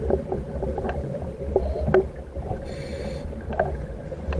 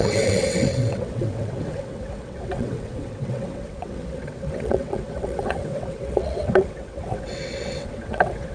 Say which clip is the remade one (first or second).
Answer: second